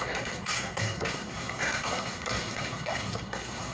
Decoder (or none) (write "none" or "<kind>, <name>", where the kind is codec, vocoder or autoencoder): codec, SNAC